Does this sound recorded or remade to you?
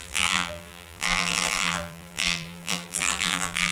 remade